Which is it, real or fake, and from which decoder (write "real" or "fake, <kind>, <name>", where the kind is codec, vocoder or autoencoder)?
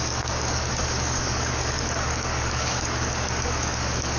fake, codec, DAC